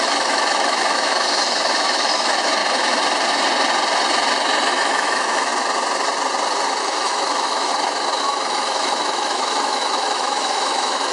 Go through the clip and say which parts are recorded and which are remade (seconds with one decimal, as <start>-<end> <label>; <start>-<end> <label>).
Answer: 0.0-2.6 remade; 2.6-4.7 recorded; 4.7-5.5 remade; 5.5-6.8 recorded; 6.8-7.7 remade; 7.7-8.2 recorded; 8.2-11.1 remade